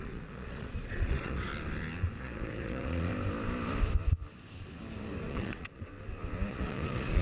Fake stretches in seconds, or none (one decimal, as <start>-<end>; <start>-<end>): 0.0-1.5; 2.2-3.1; 5.3-5.9; 6.5-7.2